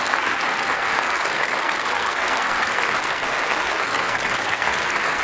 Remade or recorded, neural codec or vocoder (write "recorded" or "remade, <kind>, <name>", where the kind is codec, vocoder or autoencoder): remade, codec, SNAC